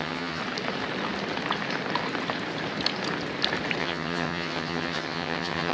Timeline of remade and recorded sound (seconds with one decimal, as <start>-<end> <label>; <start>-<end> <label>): 0.0-0.4 remade; 0.4-3.8 recorded; 3.8-5.7 remade